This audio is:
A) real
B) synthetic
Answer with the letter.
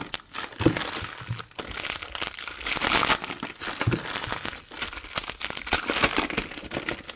A